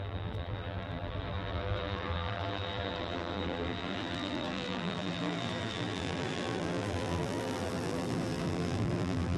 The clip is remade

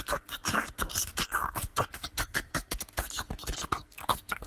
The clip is remade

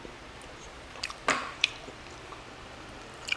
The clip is remade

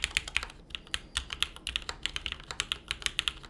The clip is recorded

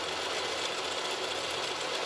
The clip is recorded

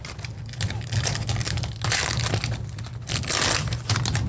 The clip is recorded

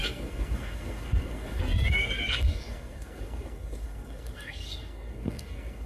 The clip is remade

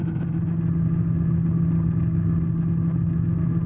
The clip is recorded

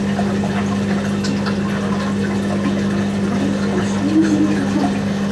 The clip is recorded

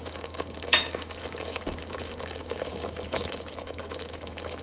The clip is remade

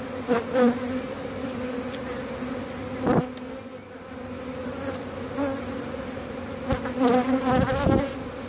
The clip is recorded